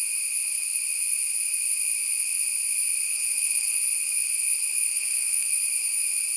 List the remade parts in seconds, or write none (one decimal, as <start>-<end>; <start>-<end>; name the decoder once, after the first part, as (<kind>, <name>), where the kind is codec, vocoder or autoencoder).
3.1-3.8 (codec, SNAC); 4.9-5.5